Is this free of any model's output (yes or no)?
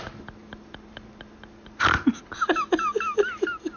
yes